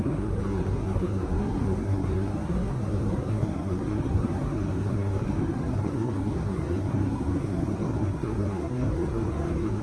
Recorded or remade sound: remade